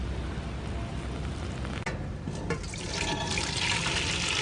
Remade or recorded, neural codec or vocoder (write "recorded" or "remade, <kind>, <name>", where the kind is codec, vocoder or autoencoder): recorded